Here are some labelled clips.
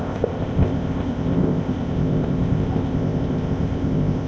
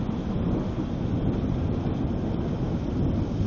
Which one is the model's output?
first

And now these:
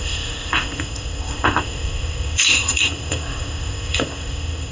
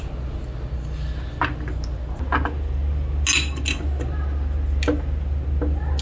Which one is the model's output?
first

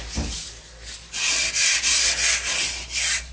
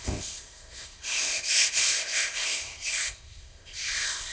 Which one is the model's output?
second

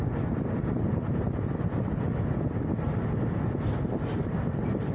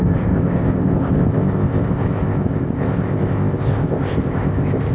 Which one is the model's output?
second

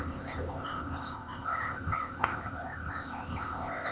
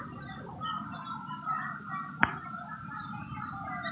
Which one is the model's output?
first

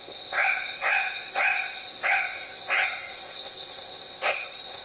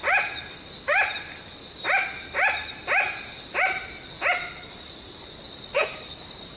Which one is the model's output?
first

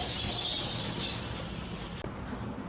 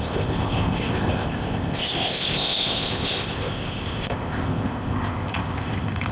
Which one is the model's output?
second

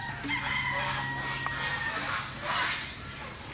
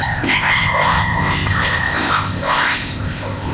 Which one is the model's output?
second